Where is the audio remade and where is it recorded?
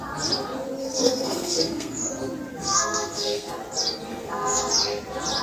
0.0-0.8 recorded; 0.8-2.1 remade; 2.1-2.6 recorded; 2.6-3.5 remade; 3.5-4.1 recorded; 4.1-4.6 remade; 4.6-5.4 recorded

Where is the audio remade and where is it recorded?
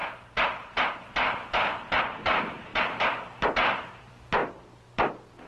0.0-2.0 recorded; 2.0-2.7 remade; 2.7-4.0 recorded; 4.0-4.4 remade; 4.4-5.5 recorded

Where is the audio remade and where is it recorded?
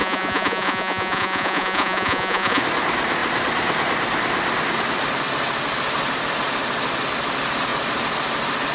0.0-2.6 remade; 2.6-8.7 recorded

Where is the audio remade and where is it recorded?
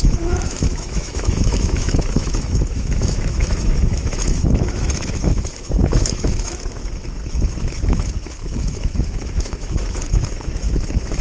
0.0-11.2 remade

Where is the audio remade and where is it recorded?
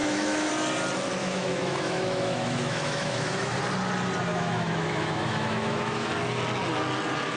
0.0-0.5 remade; 0.5-1.2 recorded; 1.2-3.6 remade; 3.6-4.3 recorded; 4.3-6.1 remade; 6.1-7.4 recorded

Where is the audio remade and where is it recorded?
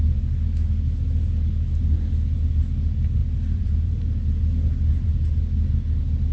0.0-3.2 recorded; 3.2-5.1 remade; 5.1-6.3 recorded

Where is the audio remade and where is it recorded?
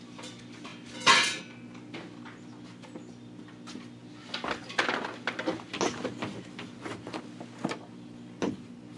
0.0-9.0 recorded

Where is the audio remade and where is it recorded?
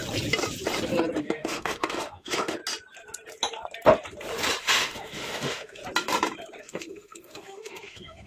0.0-1.2 recorded; 1.2-2.6 remade; 2.6-4.6 recorded; 4.6-5.8 remade; 5.8-6.6 recorded; 6.6-8.3 remade